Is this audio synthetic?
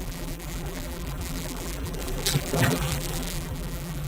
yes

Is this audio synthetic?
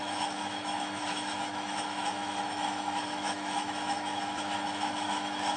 yes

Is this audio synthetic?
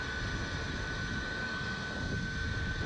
no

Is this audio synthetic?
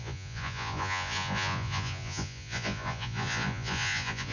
yes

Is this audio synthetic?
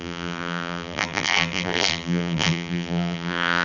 yes